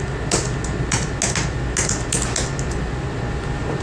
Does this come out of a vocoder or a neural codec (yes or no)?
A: no